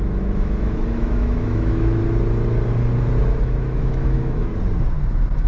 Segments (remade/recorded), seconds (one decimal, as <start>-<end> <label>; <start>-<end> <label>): 0.0-2.0 remade; 2.0-3.4 recorded; 3.4-4.5 remade; 4.5-5.5 recorded